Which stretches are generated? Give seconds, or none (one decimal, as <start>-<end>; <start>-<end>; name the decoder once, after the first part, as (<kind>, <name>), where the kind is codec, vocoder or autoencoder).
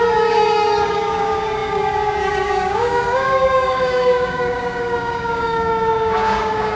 0.0-6.8 (codec, DAC)